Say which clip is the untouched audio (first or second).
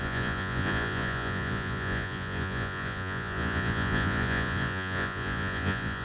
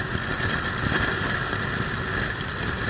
second